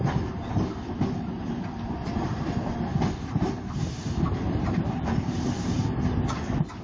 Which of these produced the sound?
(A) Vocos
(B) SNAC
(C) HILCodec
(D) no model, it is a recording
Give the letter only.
D